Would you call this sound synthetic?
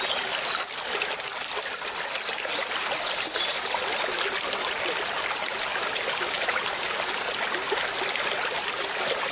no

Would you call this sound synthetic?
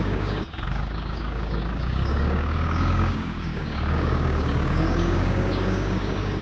yes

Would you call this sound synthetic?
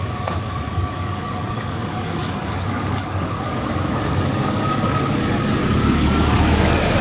yes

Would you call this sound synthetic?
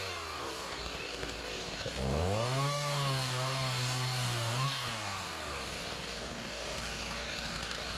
yes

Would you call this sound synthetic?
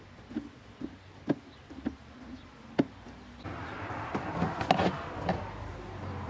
no